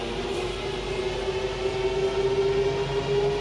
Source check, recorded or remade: recorded